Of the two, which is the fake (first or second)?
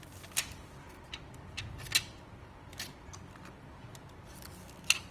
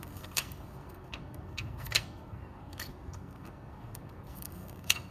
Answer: second